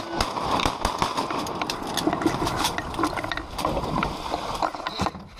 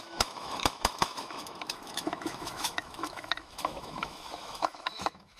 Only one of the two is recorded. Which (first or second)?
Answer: first